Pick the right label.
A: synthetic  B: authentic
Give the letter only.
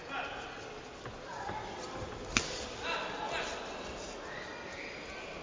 B